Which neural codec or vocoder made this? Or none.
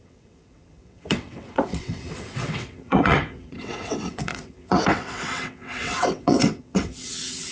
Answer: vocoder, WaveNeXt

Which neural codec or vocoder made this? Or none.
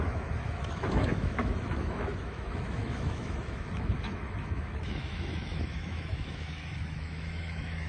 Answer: autoencoder, DAC-VAE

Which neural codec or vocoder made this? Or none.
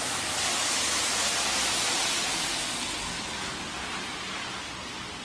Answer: none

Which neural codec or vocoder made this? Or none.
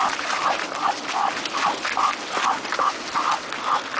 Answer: none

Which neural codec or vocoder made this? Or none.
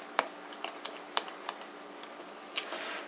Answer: none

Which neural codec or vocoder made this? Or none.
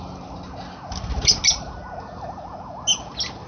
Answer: none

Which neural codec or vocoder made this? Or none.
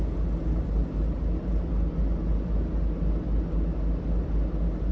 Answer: none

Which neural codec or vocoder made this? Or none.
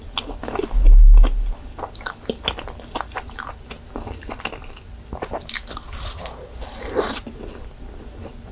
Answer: none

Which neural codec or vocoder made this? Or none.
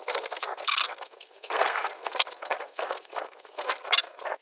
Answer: codec, SNAC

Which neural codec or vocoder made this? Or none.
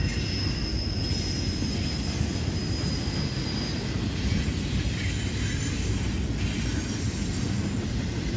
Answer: none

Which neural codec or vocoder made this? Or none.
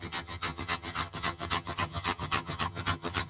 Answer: vocoder, HiFi-GAN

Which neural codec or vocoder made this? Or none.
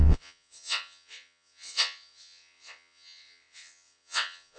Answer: vocoder, WaveNeXt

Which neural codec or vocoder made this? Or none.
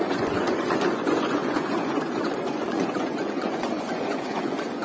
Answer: vocoder, Vocos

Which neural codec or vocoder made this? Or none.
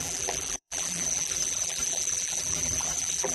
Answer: vocoder, BigVGAN v2